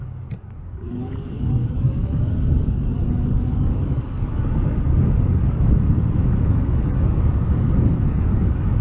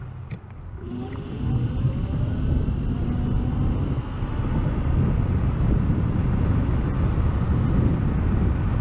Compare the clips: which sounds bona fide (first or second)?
second